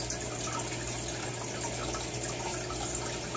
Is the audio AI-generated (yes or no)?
no